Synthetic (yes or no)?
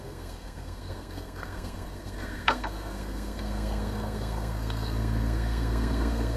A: yes